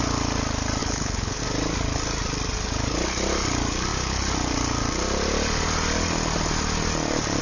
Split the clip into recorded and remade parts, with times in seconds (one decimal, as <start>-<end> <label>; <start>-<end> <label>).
0.0-0.8 recorded; 0.8-1.4 remade; 1.4-7.4 recorded